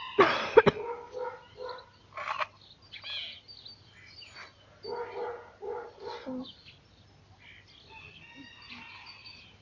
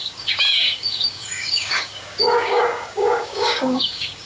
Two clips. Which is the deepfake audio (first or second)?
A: second